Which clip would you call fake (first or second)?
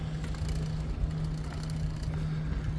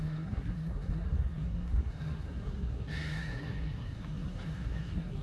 second